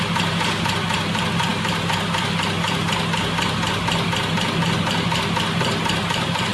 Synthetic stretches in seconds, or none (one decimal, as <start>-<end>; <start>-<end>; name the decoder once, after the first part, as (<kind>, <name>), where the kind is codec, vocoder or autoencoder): none

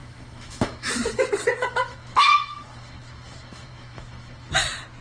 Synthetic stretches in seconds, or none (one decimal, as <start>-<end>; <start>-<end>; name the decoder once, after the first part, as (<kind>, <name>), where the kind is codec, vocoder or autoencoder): 0.0-0.9 (autoencoder, DAC-VAE); 1.6-4.5

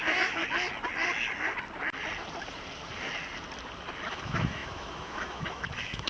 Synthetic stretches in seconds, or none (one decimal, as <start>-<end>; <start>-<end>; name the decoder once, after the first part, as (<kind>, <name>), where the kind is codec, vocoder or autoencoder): 0.0-0.4 (autoencoder, DAC-VAE); 4.1-6.1

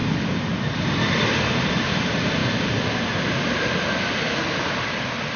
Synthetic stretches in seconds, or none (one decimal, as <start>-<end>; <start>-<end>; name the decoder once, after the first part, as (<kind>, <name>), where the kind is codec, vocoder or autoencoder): none

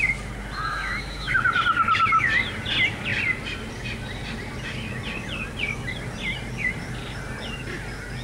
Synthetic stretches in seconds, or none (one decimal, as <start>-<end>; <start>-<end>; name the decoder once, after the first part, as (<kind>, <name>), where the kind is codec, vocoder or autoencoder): 0.7-1.3 (autoencoder, DAC-VAE)

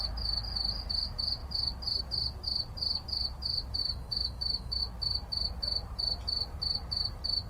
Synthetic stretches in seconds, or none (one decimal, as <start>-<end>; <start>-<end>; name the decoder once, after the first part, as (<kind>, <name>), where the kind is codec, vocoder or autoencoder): 3.8-4.8 (autoencoder, DAC-VAE)

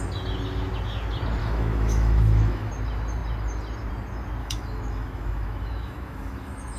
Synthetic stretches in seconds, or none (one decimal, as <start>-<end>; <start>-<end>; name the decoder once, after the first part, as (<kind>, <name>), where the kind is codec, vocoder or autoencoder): 1.4-2.7 (autoencoder, DAC-VAE); 4.4-6.8